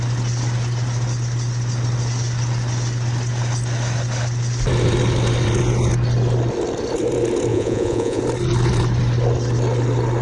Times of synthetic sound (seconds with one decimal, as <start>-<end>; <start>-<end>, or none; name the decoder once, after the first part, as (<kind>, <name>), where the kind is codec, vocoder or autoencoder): 7.5-8.2 (vocoder, Vocos)

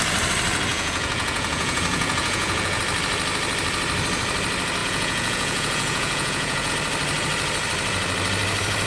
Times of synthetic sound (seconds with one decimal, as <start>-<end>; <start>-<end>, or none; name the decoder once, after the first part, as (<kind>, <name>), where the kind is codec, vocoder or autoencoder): 0.7-2.8 (vocoder, Vocos); 4.8-6.7

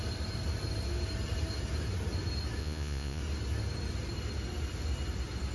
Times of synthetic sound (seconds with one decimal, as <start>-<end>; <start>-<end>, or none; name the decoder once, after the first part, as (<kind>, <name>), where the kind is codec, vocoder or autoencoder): 2.6-3.2 (vocoder, Vocos)

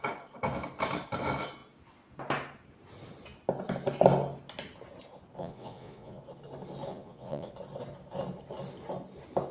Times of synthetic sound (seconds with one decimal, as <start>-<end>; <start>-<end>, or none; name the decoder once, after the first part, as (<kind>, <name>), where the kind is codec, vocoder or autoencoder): 5.4-6.2 (vocoder, Vocos); 6.9-7.5

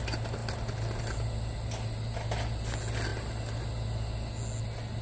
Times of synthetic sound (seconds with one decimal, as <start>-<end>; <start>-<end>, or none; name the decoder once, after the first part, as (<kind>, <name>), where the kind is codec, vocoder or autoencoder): none

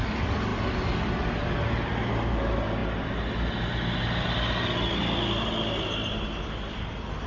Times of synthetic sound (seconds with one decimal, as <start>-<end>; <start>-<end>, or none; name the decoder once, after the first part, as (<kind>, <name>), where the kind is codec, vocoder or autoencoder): none

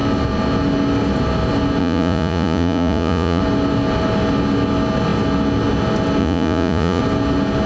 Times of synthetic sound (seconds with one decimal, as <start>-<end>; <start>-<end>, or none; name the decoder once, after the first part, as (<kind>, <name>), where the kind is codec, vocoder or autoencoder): 1.8-3.4 (vocoder, Vocos); 6.2-7.0

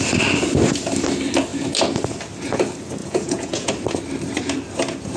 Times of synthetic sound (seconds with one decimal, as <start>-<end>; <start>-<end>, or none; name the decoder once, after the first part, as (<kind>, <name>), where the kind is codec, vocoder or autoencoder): 3.0-3.7 (vocoder, Vocos)